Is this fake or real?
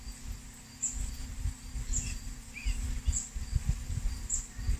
real